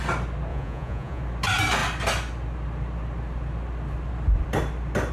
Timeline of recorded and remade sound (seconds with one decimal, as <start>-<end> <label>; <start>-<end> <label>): 0.0-0.5 recorded; 0.5-1.2 remade; 1.2-5.1 recorded